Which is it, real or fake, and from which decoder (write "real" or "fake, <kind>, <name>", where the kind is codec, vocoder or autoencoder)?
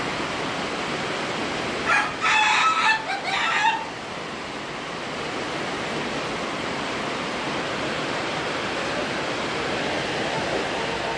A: real